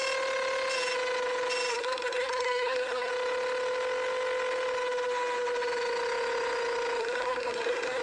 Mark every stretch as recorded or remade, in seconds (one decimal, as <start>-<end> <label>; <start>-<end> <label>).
0.0-1.7 recorded; 1.7-3.1 remade; 3.1-7.0 recorded; 7.0-8.0 remade